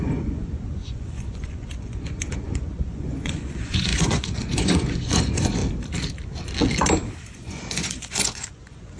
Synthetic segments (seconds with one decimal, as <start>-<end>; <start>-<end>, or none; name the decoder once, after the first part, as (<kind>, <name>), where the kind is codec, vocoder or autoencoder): 0.0-5.6 (vocoder, Vocos); 7.3-9.0